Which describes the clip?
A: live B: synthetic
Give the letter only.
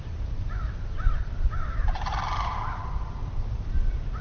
A